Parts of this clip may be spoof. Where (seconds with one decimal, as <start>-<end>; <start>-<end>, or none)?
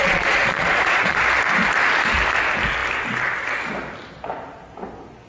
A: 0.0-1.2